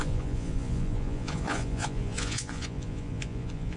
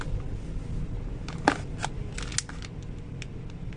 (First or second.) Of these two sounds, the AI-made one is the first